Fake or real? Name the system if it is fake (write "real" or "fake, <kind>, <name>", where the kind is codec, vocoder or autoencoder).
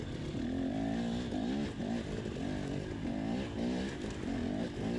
real